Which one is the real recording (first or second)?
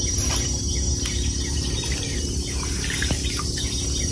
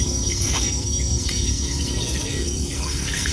first